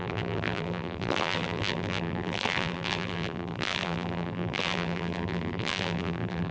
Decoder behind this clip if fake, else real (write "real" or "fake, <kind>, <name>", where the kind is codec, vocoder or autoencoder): fake, vocoder, BigVGAN v2